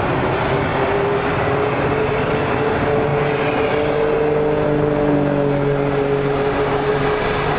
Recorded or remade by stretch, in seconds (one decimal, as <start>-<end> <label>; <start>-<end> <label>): 0.0-7.6 recorded